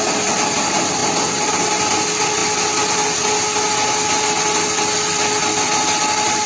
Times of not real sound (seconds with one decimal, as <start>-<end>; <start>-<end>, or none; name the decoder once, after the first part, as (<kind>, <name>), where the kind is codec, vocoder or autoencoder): none